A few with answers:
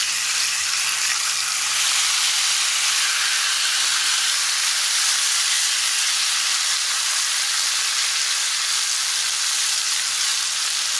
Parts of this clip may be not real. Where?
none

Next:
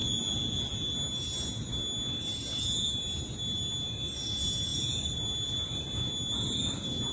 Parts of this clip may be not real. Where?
none

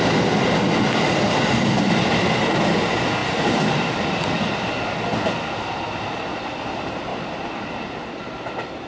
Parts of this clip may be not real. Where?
3.2-5.0 (vocoder, BigVGAN v2); 7.1-8.0

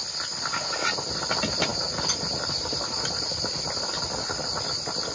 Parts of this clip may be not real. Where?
none

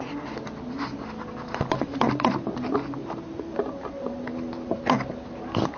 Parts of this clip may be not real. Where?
3.0-4.8 (vocoder, BigVGAN v2)

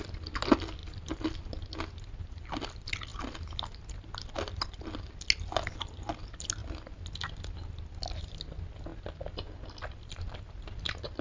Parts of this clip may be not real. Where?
none

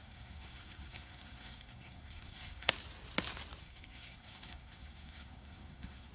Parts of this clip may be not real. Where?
0.0-2.7 (codec, SNAC); 3.6-6.1